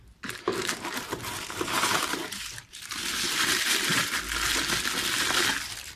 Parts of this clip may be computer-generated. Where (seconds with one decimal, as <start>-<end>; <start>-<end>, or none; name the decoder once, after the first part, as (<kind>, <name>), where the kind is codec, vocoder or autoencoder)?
0.5-4.1 (vocoder, BigVGAN v2)